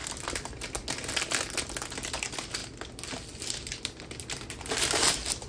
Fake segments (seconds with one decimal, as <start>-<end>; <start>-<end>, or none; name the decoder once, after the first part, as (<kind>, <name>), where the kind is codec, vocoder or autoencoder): none